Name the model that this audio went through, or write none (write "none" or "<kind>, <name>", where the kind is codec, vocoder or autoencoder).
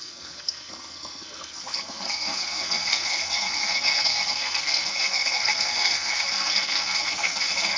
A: codec, SNAC